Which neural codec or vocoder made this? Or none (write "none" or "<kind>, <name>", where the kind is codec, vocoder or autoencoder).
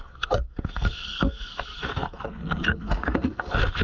codec, SNAC